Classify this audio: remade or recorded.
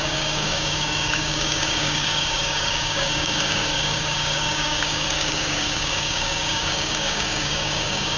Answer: remade